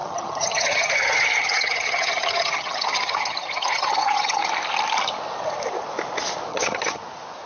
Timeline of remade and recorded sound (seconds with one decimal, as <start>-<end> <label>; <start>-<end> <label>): 0.0-4.5 remade; 4.5-6.5 recorded; 6.5-7.0 remade; 7.0-7.5 recorded